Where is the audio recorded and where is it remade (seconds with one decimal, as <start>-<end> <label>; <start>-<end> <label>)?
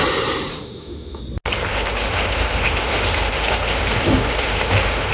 0.0-0.5 recorded; 0.5-1.2 remade; 1.2-1.7 recorded; 1.7-5.1 remade